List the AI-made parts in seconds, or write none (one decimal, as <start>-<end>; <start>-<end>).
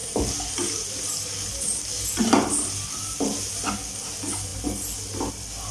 none